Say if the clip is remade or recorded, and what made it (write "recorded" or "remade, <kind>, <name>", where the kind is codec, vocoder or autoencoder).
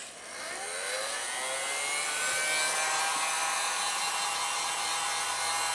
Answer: recorded